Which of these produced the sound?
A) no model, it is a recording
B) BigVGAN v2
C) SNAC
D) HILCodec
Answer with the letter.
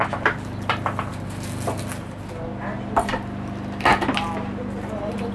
A